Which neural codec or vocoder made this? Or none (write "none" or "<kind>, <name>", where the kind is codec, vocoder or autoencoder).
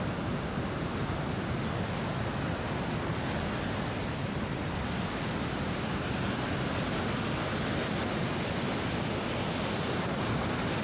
none